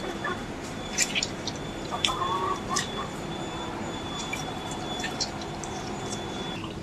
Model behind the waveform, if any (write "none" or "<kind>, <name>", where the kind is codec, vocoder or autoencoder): vocoder, BigVGAN v2